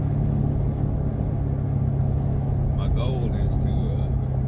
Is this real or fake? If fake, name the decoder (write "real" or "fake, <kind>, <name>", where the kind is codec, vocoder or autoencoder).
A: real